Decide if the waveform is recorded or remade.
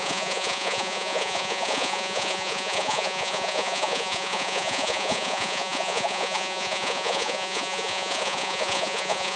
remade